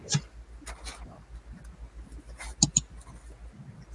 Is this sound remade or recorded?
recorded